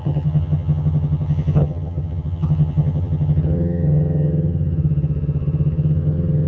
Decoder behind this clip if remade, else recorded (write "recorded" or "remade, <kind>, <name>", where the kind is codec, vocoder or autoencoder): remade, vocoder, HiFi-GAN